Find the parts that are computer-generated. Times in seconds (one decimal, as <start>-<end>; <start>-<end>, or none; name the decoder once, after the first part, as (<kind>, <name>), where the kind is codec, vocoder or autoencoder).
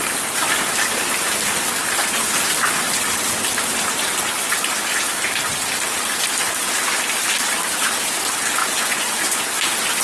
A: 8.6-9.4 (vocoder, Vocos)